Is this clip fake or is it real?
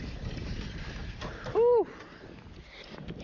real